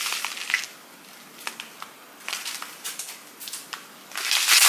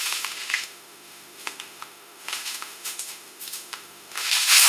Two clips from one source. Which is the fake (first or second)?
second